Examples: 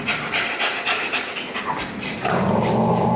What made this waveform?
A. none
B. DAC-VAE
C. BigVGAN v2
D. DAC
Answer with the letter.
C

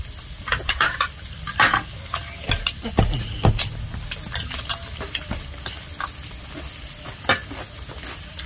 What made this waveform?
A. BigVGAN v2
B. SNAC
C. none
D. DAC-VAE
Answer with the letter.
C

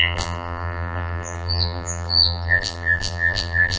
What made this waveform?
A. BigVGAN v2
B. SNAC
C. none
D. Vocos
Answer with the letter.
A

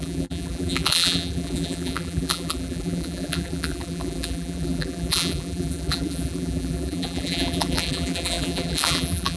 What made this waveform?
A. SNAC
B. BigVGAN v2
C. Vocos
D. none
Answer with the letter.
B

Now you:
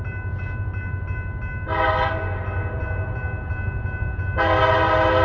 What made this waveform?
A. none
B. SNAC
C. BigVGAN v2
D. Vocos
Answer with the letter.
A